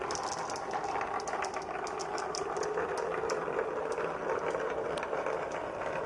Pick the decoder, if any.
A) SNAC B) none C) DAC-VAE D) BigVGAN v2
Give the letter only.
B